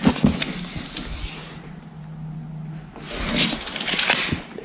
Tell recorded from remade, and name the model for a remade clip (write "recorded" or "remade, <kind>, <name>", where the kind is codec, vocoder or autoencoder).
recorded